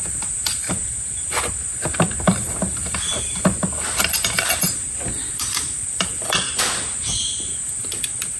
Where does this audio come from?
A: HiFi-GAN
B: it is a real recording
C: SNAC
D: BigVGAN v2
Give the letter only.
D